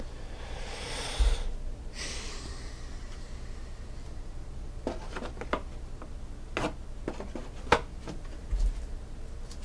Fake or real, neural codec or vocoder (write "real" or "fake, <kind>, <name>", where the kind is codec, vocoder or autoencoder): real